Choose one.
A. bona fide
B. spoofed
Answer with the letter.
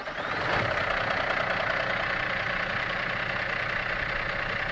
A